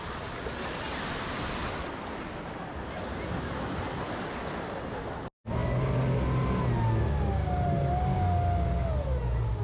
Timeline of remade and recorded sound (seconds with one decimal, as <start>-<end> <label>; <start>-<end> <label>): 0.0-9.6 recorded